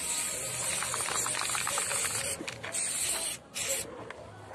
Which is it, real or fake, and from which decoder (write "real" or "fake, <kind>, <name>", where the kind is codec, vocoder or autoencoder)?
real